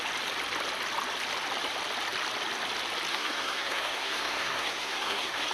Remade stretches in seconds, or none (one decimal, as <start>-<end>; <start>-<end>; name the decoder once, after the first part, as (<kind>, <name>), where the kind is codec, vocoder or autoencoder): 3.1-5.5 (codec, SNAC)